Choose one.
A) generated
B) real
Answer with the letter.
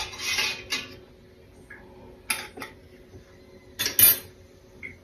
B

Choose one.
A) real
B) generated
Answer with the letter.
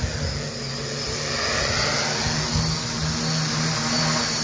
A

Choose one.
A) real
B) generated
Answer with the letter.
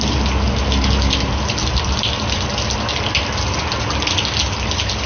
A